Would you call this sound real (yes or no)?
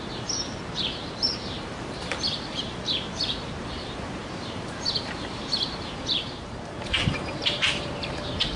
no